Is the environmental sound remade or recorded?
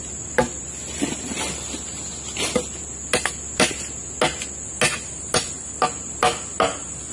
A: recorded